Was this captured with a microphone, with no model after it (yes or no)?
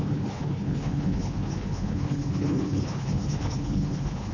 no